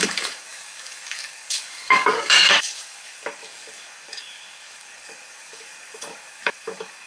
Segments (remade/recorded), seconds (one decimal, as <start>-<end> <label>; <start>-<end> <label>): 0.0-7.1 remade